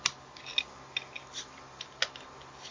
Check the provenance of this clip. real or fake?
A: real